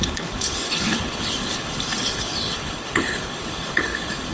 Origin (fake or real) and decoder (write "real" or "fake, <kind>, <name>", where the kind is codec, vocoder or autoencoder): fake, codec, HILCodec